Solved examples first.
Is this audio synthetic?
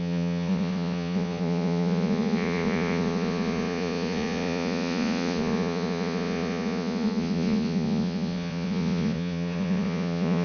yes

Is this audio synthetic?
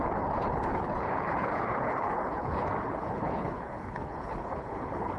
yes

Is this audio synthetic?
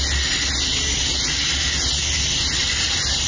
no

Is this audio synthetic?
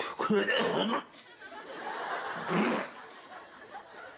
no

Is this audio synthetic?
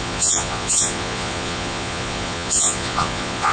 yes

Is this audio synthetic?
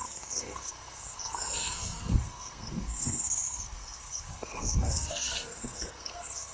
yes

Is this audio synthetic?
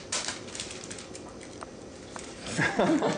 no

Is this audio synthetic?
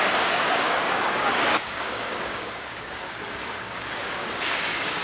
yes